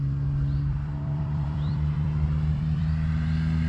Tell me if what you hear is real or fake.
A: fake